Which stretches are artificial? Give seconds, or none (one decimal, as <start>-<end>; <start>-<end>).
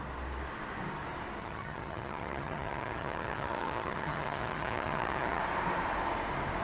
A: 1.4-5.4